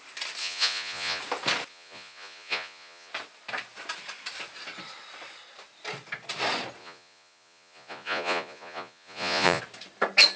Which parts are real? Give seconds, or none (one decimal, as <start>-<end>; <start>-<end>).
0.0-0.4; 1.2-1.7; 3.1-6.8; 9.6-10.4

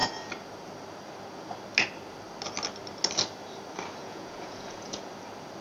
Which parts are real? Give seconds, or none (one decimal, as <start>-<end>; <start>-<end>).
0.0-4.0; 5.1-5.6

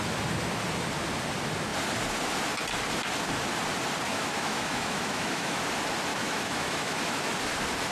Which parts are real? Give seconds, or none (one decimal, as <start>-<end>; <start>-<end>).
0.0-4.1; 5.6-6.1; 7.2-7.9

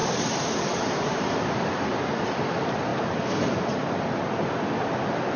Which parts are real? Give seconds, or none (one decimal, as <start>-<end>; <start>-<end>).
1.4-2.9; 3.6-5.4

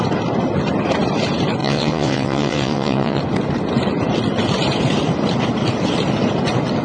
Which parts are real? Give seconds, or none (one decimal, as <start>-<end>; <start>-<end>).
0.0-1.6; 3.2-6.8